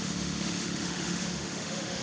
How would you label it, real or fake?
fake